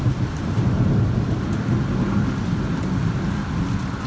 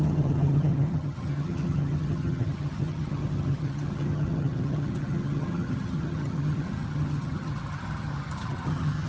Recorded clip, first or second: first